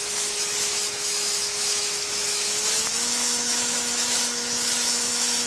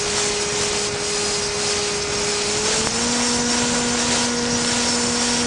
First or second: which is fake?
first